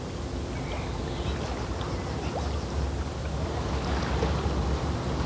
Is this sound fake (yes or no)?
no